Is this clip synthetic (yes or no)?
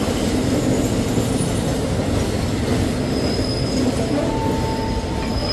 no